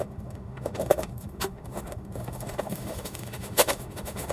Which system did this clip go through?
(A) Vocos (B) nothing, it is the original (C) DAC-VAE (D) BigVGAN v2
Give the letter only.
C